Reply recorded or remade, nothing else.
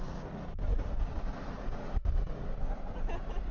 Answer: recorded